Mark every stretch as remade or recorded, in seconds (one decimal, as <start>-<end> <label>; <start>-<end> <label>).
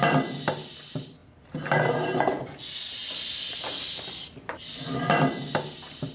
0.0-6.1 recorded